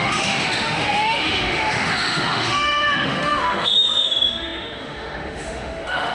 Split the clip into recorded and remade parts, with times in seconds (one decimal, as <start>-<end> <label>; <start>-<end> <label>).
0.0-6.1 remade